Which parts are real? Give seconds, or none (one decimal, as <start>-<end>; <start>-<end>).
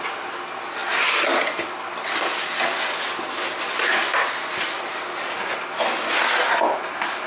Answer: 0.0-7.3